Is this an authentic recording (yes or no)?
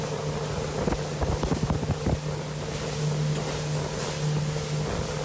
yes